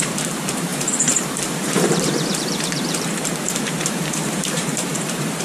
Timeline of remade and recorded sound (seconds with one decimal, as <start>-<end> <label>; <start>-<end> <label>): 0.0-5.4 remade